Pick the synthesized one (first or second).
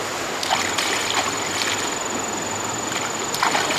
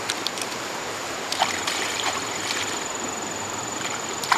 second